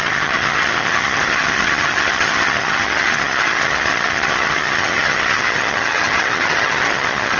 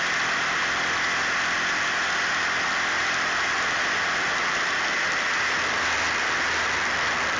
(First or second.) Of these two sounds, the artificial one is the first